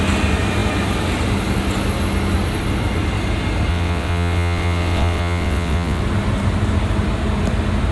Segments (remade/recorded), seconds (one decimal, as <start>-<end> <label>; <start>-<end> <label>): 0.0-3.7 recorded; 3.7-6.0 remade; 6.0-7.9 recorded